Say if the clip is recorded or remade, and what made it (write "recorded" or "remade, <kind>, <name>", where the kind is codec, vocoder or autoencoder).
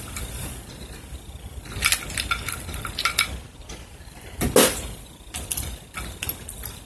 recorded